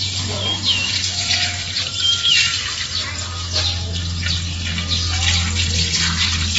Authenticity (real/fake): real